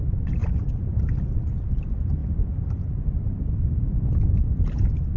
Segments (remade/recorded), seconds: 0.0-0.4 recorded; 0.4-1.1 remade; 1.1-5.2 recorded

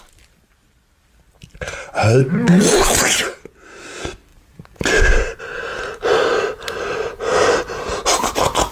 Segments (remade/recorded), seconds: 0.0-1.4 recorded; 1.4-2.3 remade; 2.3-4.3 recorded; 4.3-5.4 remade; 5.4-8.7 recorded